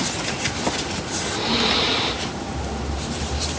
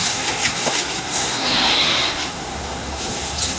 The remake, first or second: second